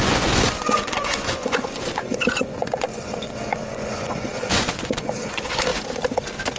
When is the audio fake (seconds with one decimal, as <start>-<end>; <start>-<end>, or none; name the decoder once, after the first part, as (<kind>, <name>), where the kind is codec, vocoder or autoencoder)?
0.0-5.7 (vocoder, Vocos)